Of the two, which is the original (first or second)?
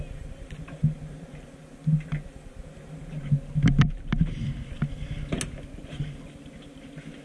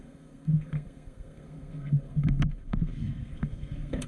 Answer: first